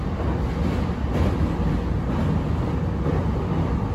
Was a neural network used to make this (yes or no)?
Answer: no